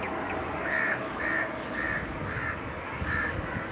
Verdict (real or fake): fake